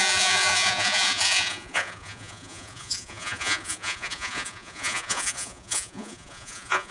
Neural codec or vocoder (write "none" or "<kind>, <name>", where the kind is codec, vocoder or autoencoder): vocoder, Vocos